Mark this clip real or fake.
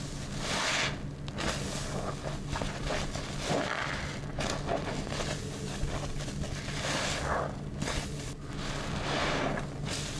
real